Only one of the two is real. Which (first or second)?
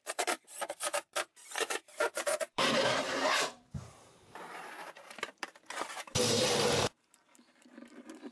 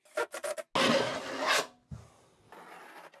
second